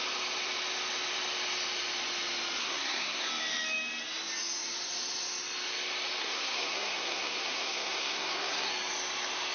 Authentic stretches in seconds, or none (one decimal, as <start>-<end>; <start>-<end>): 0.0-2.6; 3.3-6.2; 8.7-9.5